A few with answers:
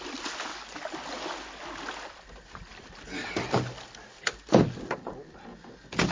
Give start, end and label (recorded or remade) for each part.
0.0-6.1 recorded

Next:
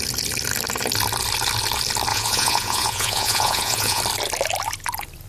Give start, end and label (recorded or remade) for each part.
0.0-2.1 recorded; 2.1-4.0 remade; 4.0-5.3 recorded

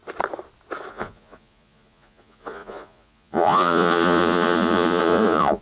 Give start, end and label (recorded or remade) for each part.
0.0-0.9 recorded; 0.9-5.6 remade

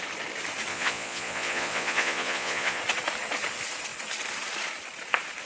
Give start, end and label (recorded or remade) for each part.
0.0-0.7 recorded; 0.7-2.8 remade; 2.8-5.5 recorded